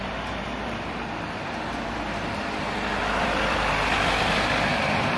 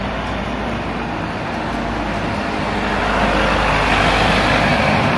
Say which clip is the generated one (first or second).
first